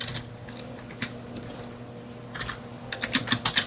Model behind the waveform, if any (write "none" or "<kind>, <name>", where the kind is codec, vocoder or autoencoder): none